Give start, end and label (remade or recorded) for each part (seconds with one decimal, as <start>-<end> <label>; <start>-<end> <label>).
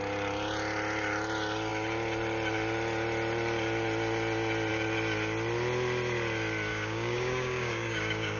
0.0-6.7 recorded; 6.7-8.4 remade